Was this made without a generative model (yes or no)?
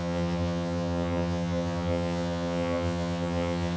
no